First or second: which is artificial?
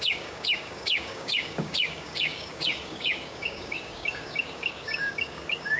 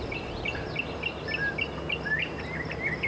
first